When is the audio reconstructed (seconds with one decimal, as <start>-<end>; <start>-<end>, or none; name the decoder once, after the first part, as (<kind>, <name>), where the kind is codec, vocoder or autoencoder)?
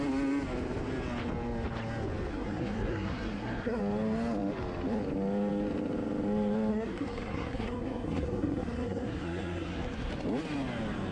2.3-3.8 (codec, SNAC); 6.7-10.1